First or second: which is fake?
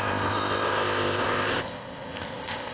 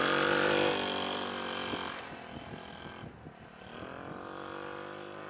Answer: first